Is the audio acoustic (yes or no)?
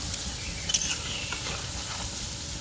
yes